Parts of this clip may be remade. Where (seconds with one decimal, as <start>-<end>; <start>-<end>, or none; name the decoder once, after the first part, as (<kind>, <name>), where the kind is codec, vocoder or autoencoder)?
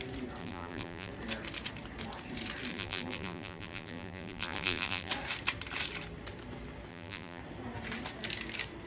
0.4-1.1 (vocoder, BigVGAN v2); 2.7-5.1; 6.9-7.4